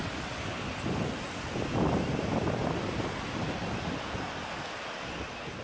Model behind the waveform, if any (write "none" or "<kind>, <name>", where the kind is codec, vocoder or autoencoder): none